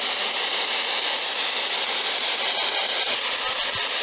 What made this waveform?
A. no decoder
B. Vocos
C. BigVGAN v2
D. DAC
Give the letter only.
A